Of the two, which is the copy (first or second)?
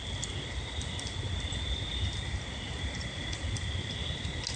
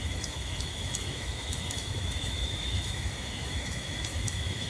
second